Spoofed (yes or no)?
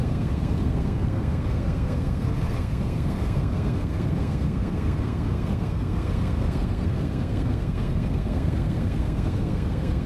yes